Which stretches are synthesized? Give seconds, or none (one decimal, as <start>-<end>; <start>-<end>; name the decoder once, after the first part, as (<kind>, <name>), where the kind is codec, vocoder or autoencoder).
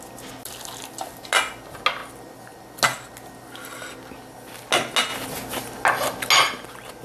none